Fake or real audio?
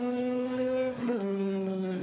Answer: fake